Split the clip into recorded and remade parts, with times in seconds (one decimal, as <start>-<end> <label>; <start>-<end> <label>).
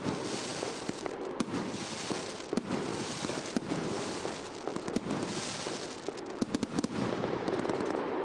0.0-0.5 recorded; 0.5-1.2 remade; 1.2-2.9 recorded; 2.9-4.2 remade; 4.2-8.2 recorded